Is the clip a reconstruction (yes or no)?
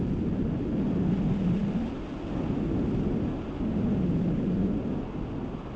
no